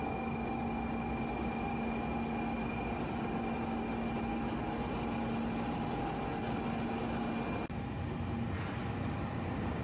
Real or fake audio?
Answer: real